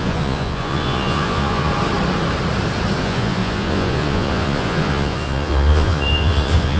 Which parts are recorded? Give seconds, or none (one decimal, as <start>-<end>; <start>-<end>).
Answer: 1.7-3.0